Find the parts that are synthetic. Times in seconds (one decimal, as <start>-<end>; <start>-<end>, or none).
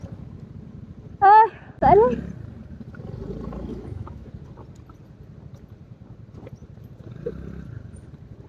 3.7-4.3